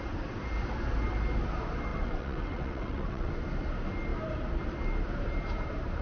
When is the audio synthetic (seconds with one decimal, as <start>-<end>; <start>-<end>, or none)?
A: 1.9-3.3